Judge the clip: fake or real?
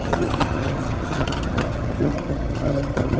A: fake